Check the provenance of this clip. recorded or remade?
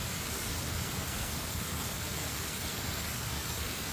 remade